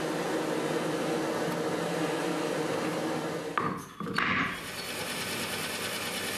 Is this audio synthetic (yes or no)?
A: no